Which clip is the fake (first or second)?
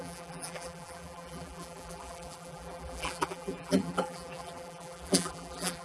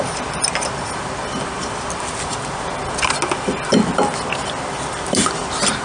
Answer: first